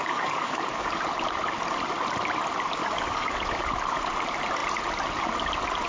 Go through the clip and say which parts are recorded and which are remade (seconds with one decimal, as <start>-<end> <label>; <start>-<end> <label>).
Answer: 0.0-0.9 remade; 0.9-2.8 recorded; 2.8-3.6 remade; 3.6-5.9 recorded